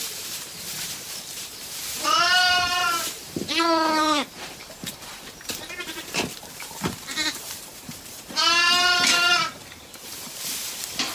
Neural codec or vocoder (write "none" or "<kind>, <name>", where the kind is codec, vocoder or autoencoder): vocoder, BigVGAN v2